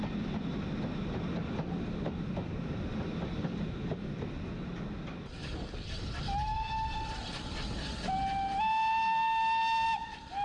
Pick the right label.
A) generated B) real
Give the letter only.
B